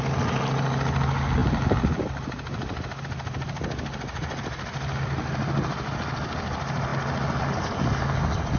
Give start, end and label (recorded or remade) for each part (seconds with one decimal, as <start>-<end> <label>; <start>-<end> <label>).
0.0-8.6 recorded

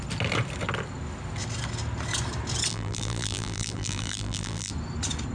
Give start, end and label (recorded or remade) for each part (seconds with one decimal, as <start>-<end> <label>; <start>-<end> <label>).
0.0-2.7 recorded; 2.7-4.7 remade; 4.7-5.3 recorded

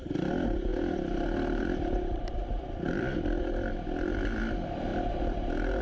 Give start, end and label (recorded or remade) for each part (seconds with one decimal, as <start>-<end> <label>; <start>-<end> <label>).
0.0-0.7 recorded; 0.7-3.4 remade; 3.4-4.9 recorded; 4.9-5.8 remade

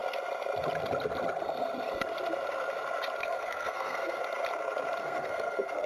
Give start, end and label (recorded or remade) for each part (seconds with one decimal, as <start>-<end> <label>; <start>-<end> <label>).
0.0-3.2 recorded; 3.2-4.2 remade; 4.2-5.0 recorded; 5.0-5.9 remade

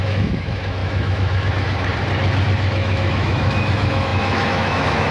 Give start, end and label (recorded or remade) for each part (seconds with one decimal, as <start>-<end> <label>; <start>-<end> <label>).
0.0-1.9 remade; 1.9-2.5 recorded; 2.5-5.1 remade

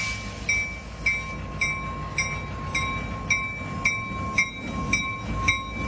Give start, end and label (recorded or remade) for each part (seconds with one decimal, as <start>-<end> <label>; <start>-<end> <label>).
0.0-5.9 recorded

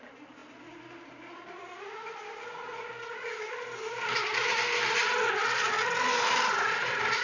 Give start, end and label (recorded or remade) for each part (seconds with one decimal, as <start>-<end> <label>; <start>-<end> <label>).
0.0-7.2 recorded

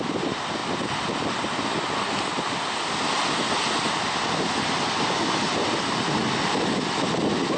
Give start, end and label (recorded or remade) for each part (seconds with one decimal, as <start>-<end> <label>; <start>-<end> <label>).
0.0-7.6 recorded